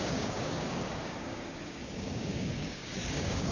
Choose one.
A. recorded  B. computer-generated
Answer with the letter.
B